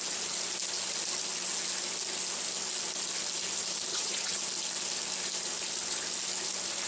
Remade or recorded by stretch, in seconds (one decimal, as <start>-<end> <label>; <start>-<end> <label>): 0.0-3.9 recorded; 3.9-4.4 remade; 4.4-6.9 recorded